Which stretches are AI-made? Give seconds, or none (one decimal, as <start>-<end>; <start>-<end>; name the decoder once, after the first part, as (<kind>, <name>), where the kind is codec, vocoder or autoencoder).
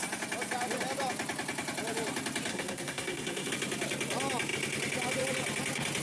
2.5-3.5 (codec, SNAC)